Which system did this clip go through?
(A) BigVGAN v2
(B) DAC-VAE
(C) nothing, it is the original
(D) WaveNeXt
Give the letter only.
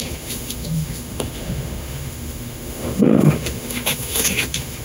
B